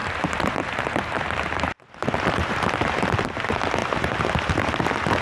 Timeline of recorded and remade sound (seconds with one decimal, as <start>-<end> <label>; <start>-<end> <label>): 0.0-3.1 remade; 3.1-3.8 recorded; 3.8-4.3 remade; 4.3-5.2 recorded